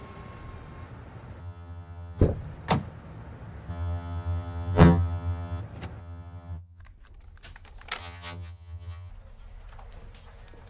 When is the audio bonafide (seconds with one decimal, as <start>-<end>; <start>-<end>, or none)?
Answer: 0.0-1.4; 2.2-3.7; 5.6-6.0; 6.8-8.0; 9.1-10.7